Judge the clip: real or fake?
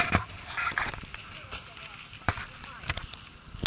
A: real